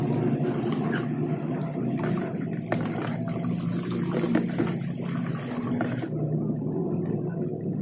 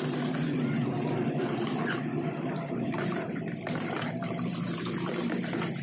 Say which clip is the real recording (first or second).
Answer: first